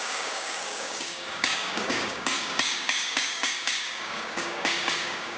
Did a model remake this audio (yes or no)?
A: yes